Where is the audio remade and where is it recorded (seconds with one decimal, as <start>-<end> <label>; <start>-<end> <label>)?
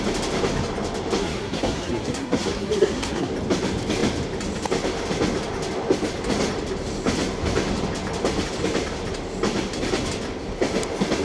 0.0-1.2 recorded; 1.2-3.3 remade; 3.3-11.2 recorded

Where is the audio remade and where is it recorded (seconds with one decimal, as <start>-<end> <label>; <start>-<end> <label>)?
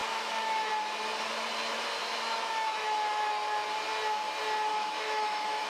0.0-0.7 remade; 0.7-2.0 recorded; 2.0-3.3 remade; 3.3-4.7 recorded; 4.7-5.7 remade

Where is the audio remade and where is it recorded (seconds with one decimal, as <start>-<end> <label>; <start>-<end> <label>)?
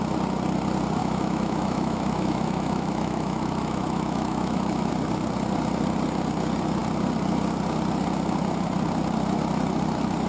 0.0-1.0 recorded; 1.0-4.9 remade; 4.9-10.3 recorded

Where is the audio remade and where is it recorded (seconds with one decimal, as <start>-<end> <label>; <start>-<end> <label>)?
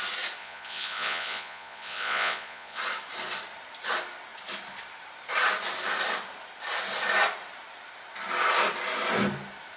0.0-0.4 recorded; 0.4-2.8 remade; 2.8-9.8 recorded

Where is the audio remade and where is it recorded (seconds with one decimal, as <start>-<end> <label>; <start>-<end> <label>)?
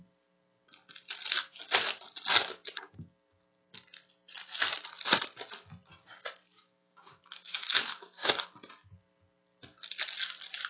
0.0-6.6 recorded; 6.6-8.3 remade; 8.3-10.7 recorded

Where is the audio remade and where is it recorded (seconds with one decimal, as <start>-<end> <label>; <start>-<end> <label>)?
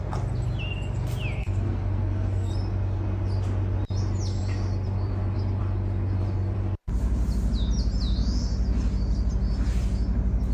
0.0-1.4 recorded; 1.4-2.5 remade; 2.5-10.5 recorded